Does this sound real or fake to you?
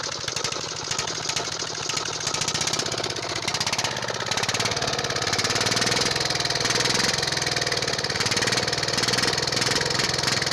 real